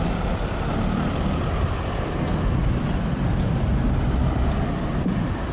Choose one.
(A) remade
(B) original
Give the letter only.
B